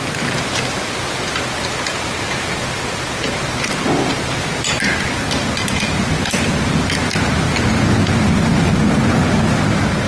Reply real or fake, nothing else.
real